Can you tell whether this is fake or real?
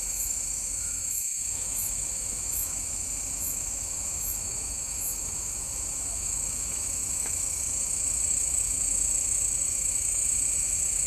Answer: fake